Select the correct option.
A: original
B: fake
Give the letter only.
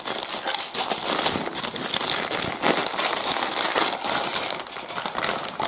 A